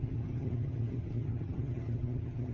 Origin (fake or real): fake